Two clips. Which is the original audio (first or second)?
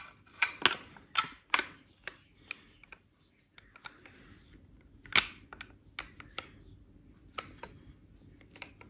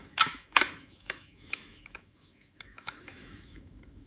first